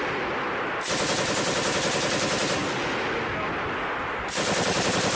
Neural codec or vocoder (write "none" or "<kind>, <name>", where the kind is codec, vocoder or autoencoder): none